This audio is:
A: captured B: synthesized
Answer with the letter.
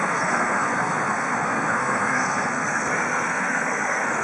B